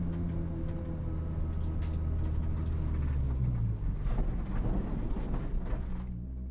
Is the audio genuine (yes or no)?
yes